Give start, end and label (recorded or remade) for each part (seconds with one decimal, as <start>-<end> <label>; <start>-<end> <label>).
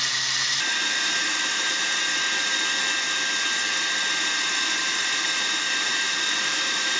0.0-2.0 remade; 2.0-4.4 recorded; 4.4-7.0 remade